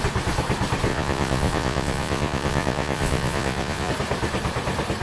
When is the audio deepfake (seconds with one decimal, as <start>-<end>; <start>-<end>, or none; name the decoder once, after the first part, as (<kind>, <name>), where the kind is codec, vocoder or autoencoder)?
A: 0.9-3.9 (vocoder, Vocos)